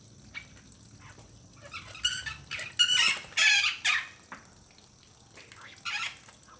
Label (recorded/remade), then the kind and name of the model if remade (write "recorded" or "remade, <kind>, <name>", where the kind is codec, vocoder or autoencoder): recorded